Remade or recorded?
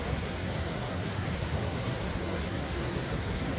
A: remade